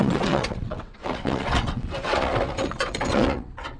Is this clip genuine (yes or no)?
no